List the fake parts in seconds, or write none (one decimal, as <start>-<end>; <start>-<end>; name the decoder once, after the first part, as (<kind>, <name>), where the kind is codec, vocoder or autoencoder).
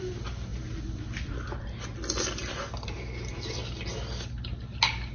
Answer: none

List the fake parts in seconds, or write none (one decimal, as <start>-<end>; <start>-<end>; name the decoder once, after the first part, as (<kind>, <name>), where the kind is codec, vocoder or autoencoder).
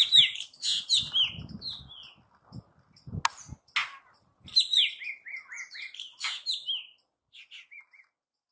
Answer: none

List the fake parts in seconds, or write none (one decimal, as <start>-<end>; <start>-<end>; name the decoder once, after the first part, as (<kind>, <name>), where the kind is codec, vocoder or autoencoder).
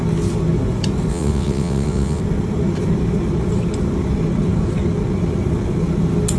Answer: 1.1-2.2 (vocoder, WaveNeXt)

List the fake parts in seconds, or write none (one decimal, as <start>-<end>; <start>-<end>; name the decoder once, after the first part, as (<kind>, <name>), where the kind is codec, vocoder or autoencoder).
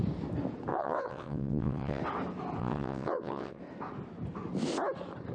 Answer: 0.7-2.0 (vocoder, WaveNeXt); 2.6-3.6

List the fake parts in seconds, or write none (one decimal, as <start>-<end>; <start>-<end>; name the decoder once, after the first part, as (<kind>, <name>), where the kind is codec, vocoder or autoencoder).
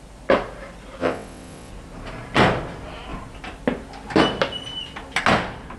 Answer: 1.0-1.7 (vocoder, WaveNeXt)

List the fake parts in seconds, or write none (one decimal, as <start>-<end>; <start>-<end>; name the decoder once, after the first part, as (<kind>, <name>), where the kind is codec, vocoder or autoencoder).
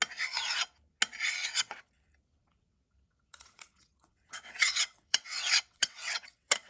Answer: 1.4-1.9 (vocoder, WaveNeXt); 2.4-6.7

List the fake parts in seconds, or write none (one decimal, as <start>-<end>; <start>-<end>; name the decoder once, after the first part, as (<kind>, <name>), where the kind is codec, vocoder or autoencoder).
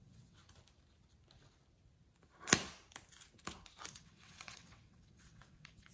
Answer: 0.0-0.4 (vocoder, WaveNeXt); 3.9-5.9